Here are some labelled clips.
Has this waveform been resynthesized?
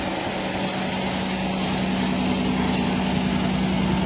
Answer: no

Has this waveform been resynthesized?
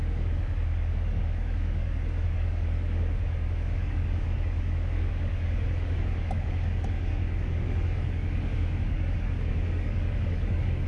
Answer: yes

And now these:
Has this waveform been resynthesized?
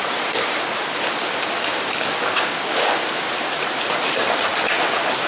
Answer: no